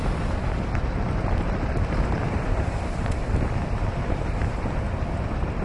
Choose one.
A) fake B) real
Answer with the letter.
B